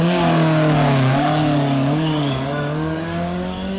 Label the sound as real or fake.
fake